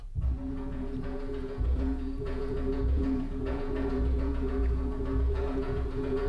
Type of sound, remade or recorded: remade